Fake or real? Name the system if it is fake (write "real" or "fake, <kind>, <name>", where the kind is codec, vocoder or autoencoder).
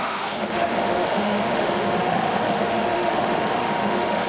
fake, autoencoder, DAC-VAE